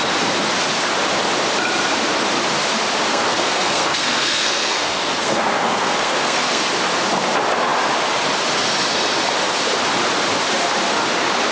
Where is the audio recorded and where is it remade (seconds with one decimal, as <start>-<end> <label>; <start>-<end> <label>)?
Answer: 0.0-3.1 recorded; 3.1-6.7 remade; 6.7-11.5 recorded